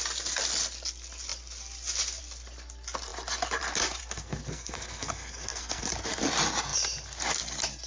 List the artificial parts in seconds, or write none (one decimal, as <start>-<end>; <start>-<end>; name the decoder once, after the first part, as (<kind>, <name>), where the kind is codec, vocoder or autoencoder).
4.0-5.9 (codec, SNAC)